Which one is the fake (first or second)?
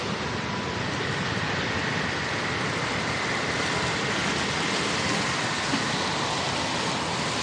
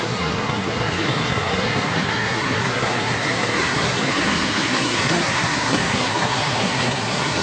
second